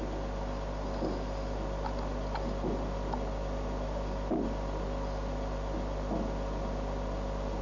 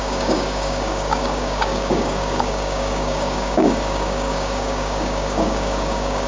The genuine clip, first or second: first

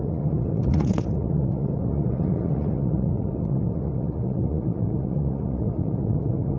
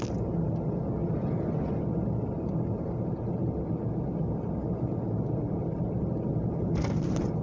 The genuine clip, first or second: second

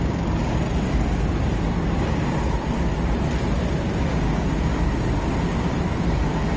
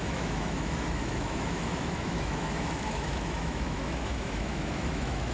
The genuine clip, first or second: first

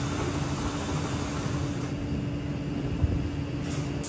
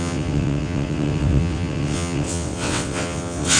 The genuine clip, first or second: first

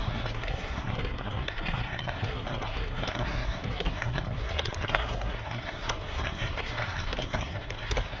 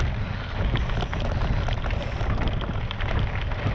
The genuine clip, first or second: second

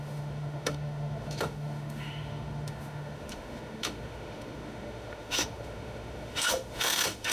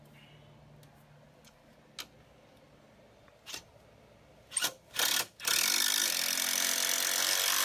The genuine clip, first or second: second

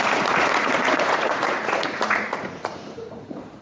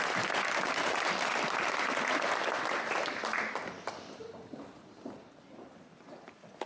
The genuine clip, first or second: second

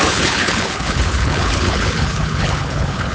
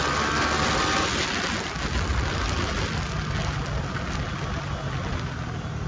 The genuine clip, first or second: second